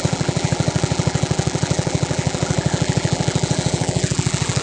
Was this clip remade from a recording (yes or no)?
yes